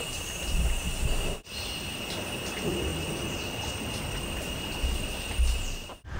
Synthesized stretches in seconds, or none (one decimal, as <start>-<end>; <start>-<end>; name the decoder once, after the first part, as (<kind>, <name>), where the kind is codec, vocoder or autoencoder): none

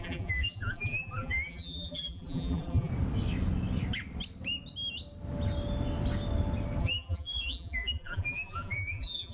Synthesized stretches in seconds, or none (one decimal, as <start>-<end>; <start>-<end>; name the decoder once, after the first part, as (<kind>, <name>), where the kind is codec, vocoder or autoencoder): 0.0-2.9 (vocoder, BigVGAN v2); 6.8-9.3

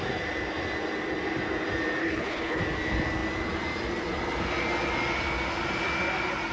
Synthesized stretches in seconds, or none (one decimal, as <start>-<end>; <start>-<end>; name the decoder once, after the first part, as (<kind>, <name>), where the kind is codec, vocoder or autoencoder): 2.0-2.6 (codec, HILCodec)

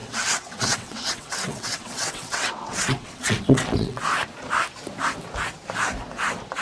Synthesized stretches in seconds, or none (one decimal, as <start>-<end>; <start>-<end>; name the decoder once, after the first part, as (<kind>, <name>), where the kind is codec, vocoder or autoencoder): 0.0-4.0 (vocoder, WaveNeXt)